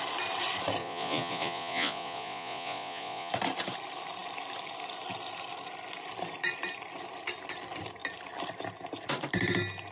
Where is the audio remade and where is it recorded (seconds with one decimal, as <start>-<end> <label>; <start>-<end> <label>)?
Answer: 0.0-0.8 recorded; 0.8-3.3 remade; 3.3-9.9 recorded